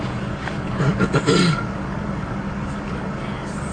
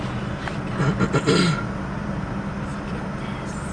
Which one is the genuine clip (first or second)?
second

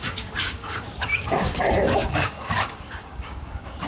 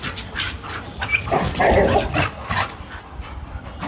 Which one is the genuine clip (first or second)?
second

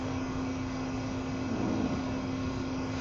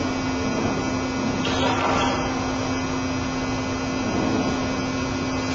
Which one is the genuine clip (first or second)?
second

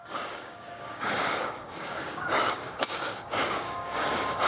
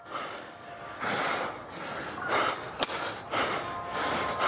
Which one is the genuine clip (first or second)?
second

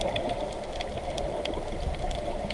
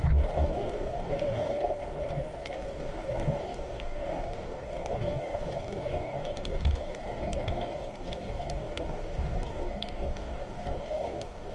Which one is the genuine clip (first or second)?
first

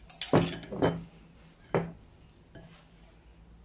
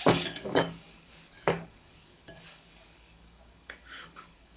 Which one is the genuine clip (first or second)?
first